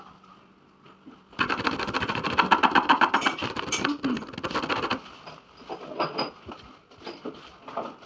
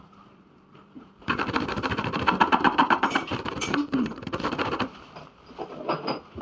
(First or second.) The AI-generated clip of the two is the second